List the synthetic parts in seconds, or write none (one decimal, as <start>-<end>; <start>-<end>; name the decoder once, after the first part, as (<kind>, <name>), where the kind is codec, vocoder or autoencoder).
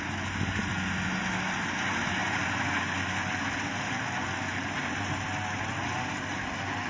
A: none